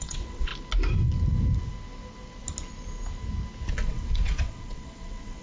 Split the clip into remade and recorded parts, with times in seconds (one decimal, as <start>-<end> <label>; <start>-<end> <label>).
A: 0.0-0.5 remade; 0.5-3.7 recorded; 3.7-5.4 remade